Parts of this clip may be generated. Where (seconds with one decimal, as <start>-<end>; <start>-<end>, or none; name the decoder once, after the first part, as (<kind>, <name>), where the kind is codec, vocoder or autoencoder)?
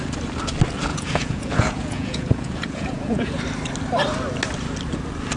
0.9-3.4 (vocoder, Vocos)